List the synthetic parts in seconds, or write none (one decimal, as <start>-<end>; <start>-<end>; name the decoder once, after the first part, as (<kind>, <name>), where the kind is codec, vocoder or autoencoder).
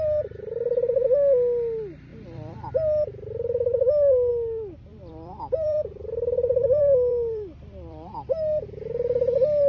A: 2.1-2.7 (vocoder, BigVGAN v2); 4.9-8.1